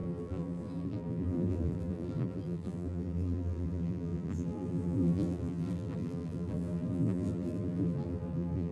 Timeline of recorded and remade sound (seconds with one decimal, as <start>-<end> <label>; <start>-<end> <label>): 0.0-8.7 remade